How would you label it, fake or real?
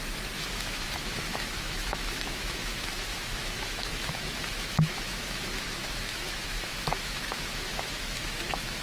fake